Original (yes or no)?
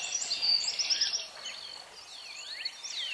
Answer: yes